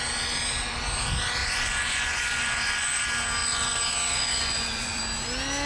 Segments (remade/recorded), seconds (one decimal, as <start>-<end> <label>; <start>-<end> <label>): 0.0-1.4 recorded; 1.4-3.0 remade; 3.0-3.4 recorded; 3.4-5.0 remade; 5.0-5.7 recorded